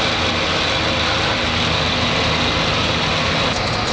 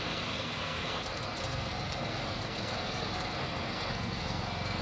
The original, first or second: first